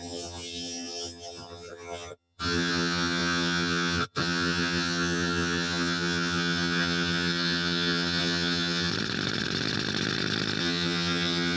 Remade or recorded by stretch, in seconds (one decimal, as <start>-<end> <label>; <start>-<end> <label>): 0.0-8.9 remade; 8.9-10.6 recorded; 10.6-11.6 remade